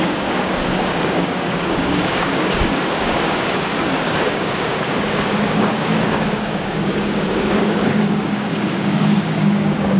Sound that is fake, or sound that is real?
fake